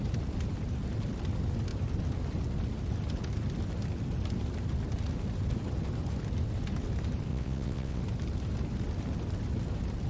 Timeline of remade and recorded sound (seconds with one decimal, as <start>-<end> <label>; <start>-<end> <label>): 0.0-7.3 recorded; 7.3-8.0 remade; 8.0-10.1 recorded